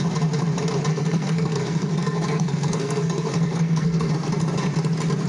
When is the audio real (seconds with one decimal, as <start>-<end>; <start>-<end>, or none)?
0.0-0.9; 4.1-5.3